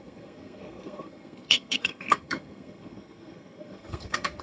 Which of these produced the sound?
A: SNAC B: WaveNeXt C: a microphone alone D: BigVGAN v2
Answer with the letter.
A